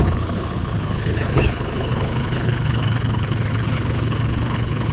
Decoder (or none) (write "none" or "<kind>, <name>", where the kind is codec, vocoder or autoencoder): codec, HILCodec